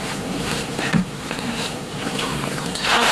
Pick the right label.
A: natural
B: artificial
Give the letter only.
B